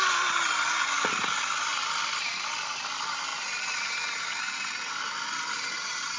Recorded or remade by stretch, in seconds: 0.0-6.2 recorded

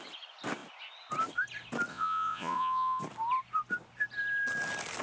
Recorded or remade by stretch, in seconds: 0.0-1.9 recorded; 1.9-3.0 remade; 3.0-5.0 recorded

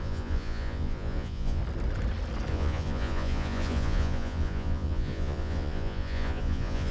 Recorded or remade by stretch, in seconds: 0.0-1.6 remade; 1.6-2.5 recorded; 2.5-6.9 remade

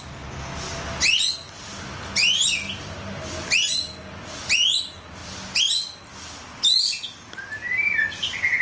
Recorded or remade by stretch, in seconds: 0.0-8.6 recorded

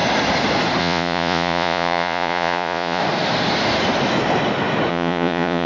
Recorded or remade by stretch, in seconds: 0.0-0.8 recorded; 0.8-3.0 remade; 3.0-4.9 recorded; 4.9-5.7 remade